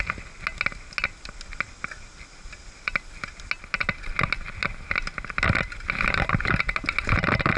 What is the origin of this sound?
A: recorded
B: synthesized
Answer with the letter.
A